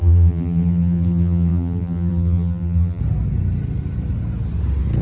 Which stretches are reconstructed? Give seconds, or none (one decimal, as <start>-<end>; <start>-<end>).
0.0-3.0